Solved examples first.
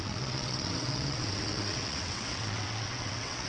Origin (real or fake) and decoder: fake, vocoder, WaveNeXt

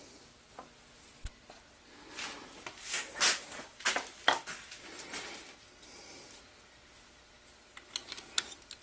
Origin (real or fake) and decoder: real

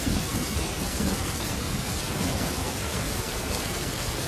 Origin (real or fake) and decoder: fake, codec, SNAC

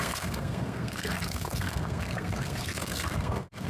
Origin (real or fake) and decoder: fake, codec, SNAC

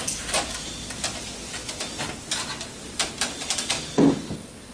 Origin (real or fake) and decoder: real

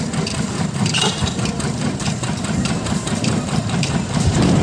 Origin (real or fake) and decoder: fake, vocoder, BigVGAN v2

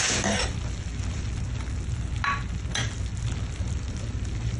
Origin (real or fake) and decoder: real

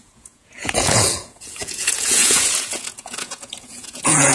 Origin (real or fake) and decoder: fake, vocoder, Vocos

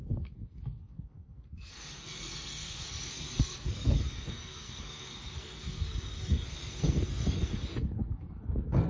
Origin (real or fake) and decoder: fake, codec, SNAC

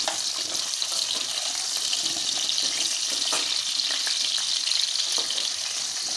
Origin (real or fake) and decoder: real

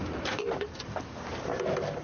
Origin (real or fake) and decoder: real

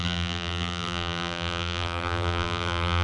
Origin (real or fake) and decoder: fake, vocoder, BigVGAN v2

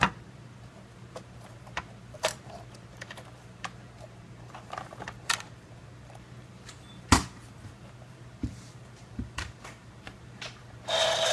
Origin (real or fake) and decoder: fake, vocoder, BigVGAN v2